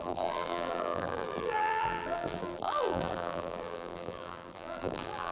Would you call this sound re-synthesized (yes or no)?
yes